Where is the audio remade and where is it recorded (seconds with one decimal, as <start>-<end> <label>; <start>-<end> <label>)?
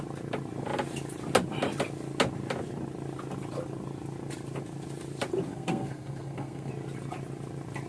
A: 0.0-5.5 recorded; 5.5-6.7 remade; 6.7-7.9 recorded